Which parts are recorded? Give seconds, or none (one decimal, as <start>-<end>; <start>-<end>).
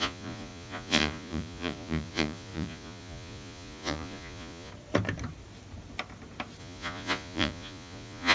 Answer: 4.7-6.6